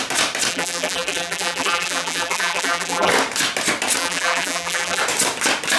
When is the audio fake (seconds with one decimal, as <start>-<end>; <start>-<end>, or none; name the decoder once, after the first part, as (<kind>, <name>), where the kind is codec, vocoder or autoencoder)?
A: 0.5-3.1 (vocoder, BigVGAN v2); 4.0-5.0